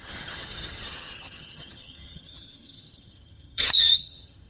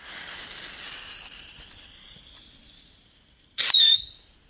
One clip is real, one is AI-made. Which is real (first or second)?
second